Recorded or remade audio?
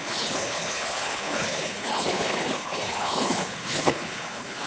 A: remade